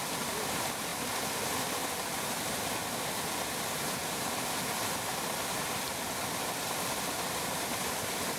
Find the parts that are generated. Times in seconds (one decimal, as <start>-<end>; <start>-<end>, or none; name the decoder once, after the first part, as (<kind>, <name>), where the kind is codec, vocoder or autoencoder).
0.0-0.9 (vocoder, BigVGAN v2); 1.6-4.0; 5.7-8.4